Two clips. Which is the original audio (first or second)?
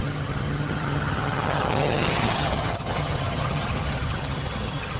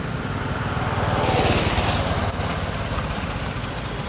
second